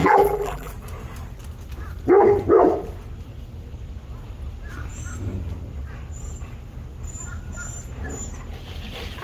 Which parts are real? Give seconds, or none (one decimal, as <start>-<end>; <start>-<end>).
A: 0.7-9.2